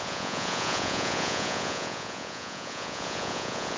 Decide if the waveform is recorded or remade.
remade